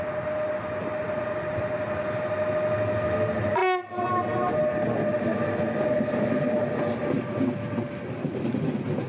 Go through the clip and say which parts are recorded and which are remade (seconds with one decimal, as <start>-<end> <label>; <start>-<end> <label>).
0.0-9.1 recorded